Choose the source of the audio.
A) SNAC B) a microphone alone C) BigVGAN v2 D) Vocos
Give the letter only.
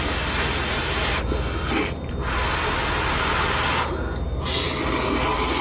B